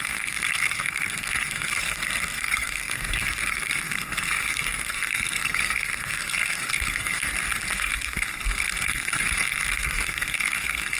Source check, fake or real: fake